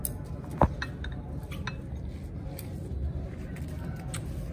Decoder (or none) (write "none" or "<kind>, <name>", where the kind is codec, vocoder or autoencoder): none